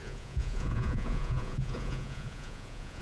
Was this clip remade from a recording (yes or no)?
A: yes